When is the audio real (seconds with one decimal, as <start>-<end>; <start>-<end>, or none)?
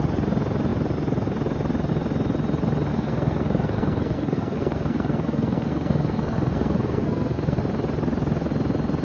0.0-2.9; 7.6-9.0